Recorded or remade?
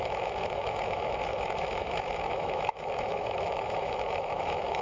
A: remade